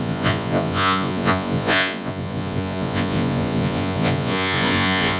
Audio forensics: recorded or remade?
remade